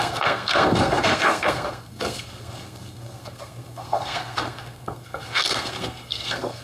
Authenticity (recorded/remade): remade